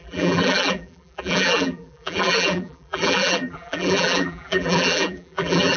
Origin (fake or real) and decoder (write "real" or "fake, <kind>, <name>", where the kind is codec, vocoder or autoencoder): fake, vocoder, BigVGAN v2